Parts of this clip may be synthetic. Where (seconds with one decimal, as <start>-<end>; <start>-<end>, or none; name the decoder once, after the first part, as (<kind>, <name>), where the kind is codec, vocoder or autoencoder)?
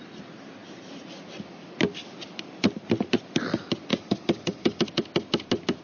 3.9-4.8 (codec, DAC)